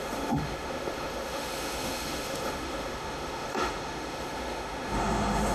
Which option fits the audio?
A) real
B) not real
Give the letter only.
B